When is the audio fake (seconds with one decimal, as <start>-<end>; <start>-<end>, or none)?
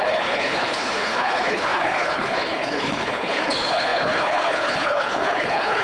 0.0-5.8